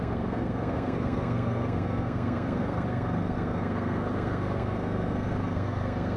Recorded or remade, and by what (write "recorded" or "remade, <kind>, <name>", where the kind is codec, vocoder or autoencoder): remade, codec, SNAC